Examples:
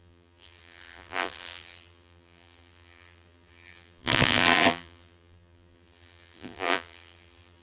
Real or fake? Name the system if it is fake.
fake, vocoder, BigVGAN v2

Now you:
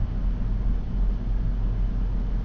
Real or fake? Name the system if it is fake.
real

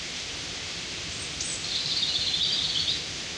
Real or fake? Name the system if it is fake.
fake, vocoder, BigVGAN v2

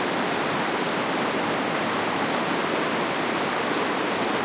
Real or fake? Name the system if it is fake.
real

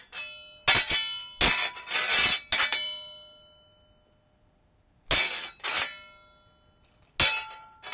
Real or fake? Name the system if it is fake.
real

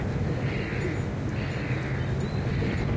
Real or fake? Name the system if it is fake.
real